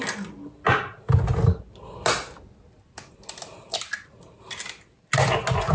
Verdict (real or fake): real